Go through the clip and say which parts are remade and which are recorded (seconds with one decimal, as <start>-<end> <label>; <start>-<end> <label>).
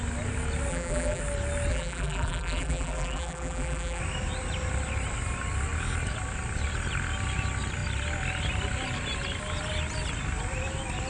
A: 0.0-0.7 recorded; 0.7-1.2 remade; 1.2-1.7 recorded; 1.7-4.0 remade; 4.0-11.1 recorded